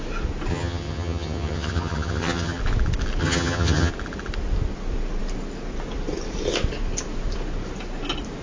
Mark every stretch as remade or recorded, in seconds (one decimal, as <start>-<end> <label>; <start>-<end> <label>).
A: 0.0-0.5 recorded; 0.5-2.6 remade; 2.6-3.2 recorded; 3.2-3.9 remade; 3.9-8.4 recorded